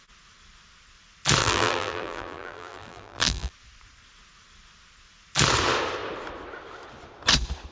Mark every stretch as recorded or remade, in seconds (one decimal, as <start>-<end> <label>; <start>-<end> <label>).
0.0-1.4 recorded; 1.4-3.5 remade; 3.5-7.7 recorded